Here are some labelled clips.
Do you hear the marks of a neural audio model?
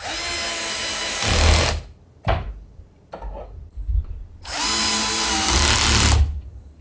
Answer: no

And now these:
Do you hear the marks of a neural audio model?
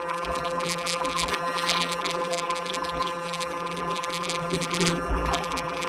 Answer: yes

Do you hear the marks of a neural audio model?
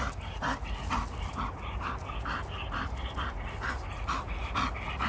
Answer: no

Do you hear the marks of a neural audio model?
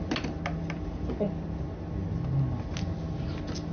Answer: no